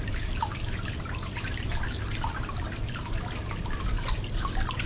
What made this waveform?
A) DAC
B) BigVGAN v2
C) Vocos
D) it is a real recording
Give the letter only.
D